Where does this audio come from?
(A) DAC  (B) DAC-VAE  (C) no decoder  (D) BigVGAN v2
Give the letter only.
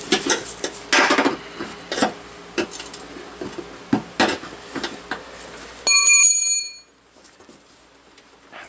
C